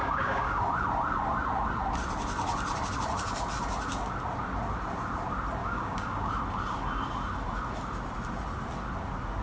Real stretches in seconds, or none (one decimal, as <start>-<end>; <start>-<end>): 0.6-5.6; 6.3-9.4